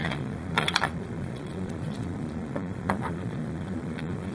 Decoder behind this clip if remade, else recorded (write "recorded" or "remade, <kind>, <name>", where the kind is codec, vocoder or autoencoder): remade, vocoder, Vocos